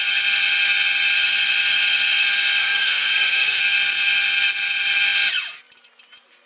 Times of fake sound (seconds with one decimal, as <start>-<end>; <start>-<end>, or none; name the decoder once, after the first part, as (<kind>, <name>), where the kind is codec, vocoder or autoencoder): 2.6-3.6 (codec, SNAC)